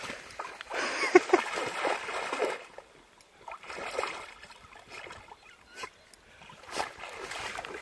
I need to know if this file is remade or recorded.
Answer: recorded